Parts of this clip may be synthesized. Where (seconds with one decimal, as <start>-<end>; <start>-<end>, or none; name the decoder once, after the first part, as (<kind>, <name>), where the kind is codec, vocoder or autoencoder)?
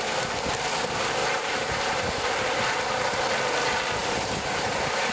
1.2-3.3 (vocoder, BigVGAN v2); 4.0-5.1